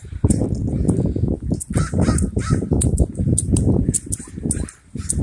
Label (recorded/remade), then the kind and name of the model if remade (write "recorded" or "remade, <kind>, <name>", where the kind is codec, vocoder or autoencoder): recorded